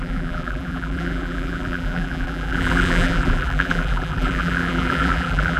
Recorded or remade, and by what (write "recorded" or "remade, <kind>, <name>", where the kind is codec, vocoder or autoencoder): remade, vocoder, BigVGAN v2